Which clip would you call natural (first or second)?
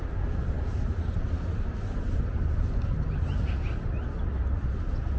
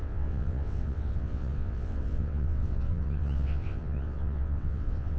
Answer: first